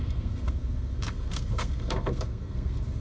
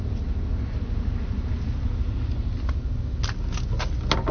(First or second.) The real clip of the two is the second